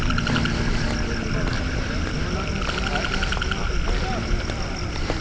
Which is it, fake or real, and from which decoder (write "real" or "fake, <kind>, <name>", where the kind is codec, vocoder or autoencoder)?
real